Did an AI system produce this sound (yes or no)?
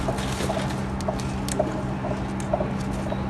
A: no